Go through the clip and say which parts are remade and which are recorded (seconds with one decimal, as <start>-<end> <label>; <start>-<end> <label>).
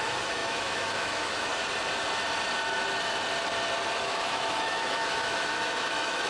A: 0.0-1.5 remade; 1.5-4.0 recorded; 4.0-6.3 remade